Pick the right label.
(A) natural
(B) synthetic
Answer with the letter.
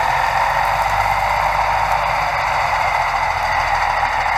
A